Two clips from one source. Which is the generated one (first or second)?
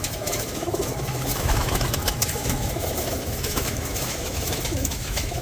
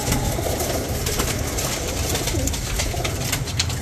first